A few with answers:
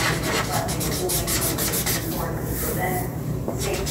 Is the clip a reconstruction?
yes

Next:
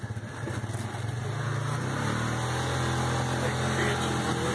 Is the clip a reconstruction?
no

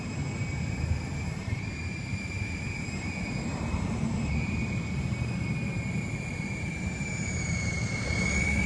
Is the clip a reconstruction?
yes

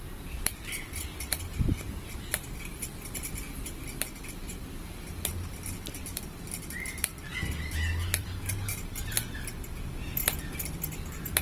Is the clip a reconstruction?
yes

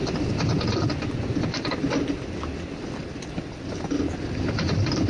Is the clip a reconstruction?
no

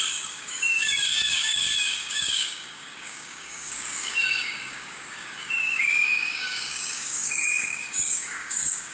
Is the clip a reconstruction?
yes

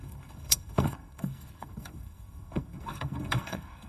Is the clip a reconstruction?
yes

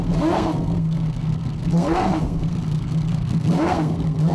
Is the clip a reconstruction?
yes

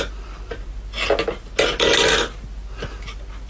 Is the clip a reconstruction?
no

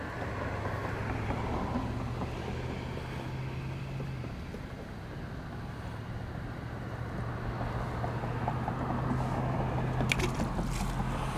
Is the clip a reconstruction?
no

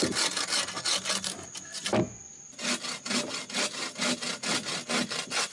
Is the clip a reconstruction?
no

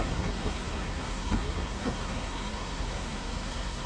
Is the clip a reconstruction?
yes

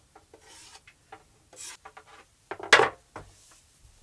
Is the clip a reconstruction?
no